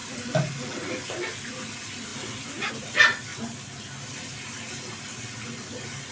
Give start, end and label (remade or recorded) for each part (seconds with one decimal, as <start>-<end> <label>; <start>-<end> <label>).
0.0-6.1 recorded